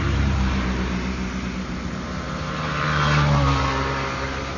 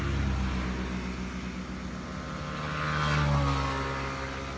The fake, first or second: first